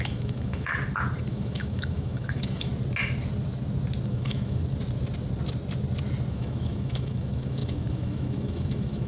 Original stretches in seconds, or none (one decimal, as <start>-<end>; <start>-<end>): 0.7-1.3; 2.7-4.1; 4.6-6.3